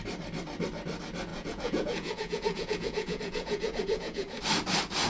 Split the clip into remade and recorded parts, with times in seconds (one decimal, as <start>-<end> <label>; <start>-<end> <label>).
0.0-1.3 recorded; 1.3-4.4 remade; 4.4-5.1 recorded